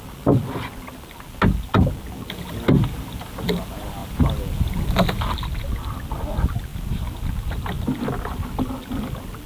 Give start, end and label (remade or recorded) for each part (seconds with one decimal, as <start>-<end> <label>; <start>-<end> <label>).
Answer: 0.0-6.7 recorded; 6.7-7.2 remade; 7.2-9.5 recorded